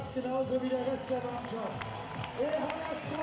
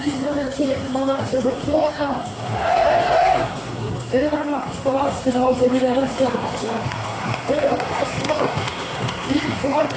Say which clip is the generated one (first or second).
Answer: second